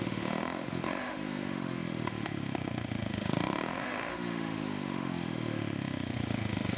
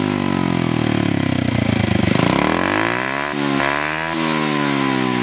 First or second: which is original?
second